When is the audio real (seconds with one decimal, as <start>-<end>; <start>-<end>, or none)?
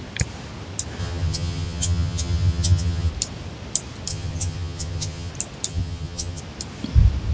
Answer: 0.0-1.0; 3.1-4.1; 5.3-5.7; 6.4-7.3